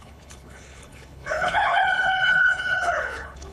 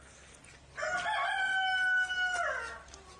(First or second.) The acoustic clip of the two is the second